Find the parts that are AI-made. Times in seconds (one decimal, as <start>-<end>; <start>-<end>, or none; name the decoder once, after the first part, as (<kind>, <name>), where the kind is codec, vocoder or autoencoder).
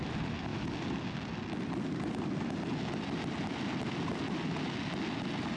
none